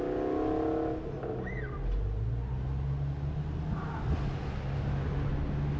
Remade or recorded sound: recorded